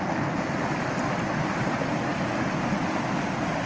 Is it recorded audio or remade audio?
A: recorded